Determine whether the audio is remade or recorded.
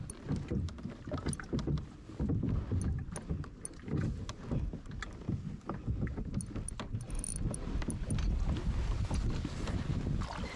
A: recorded